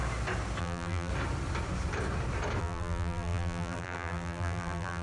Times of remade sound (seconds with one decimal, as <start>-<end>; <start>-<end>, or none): 0.6-1.1; 2.6-5.0